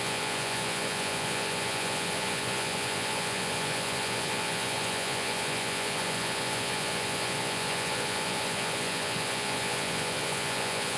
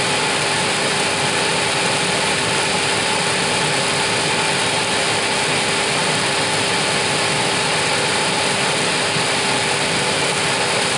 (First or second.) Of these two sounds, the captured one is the second